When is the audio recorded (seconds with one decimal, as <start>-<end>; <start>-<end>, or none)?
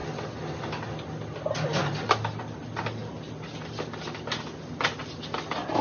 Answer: 0.0-5.8